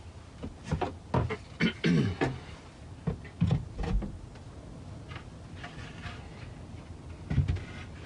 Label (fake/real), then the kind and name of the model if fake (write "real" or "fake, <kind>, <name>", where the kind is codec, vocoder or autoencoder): real